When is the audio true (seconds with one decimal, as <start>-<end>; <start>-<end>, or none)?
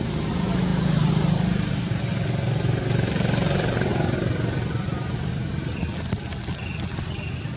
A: 0.0-7.6